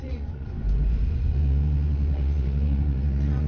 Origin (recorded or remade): remade